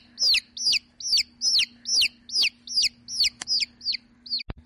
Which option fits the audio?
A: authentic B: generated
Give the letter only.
A